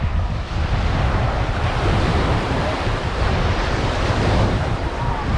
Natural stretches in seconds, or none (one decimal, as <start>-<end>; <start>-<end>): 0.0-2.1